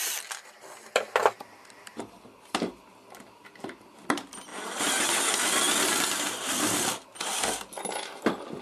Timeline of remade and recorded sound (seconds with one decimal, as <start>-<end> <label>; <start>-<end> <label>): 0.0-4.5 recorded; 4.5-5.2 remade; 5.2-8.6 recorded

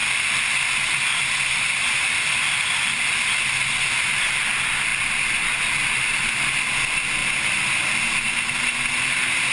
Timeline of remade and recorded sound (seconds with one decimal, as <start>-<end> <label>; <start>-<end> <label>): 0.0-9.5 recorded

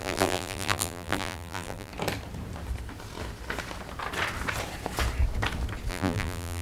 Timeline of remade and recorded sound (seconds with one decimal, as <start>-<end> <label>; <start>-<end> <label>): 0.0-1.9 remade; 1.9-5.9 recorded; 5.9-6.6 remade

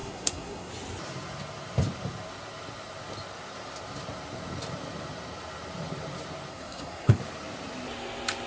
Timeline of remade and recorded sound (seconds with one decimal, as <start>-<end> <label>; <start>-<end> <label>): 0.0-0.7 remade; 0.7-6.5 recorded; 6.5-7.2 remade; 7.2-8.5 recorded

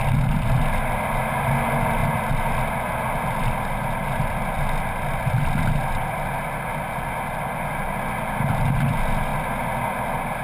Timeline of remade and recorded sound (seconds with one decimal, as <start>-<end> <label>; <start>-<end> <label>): 0.0-10.4 recorded